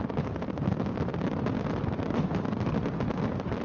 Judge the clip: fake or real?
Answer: real